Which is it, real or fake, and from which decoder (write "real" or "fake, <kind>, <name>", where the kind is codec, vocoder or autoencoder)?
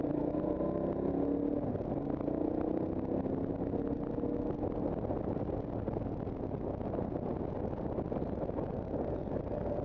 real